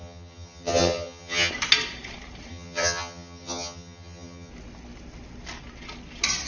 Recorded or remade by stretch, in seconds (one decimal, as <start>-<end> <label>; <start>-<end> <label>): 0.0-1.5 remade; 1.5-2.5 recorded; 2.5-4.5 remade; 4.5-6.5 recorded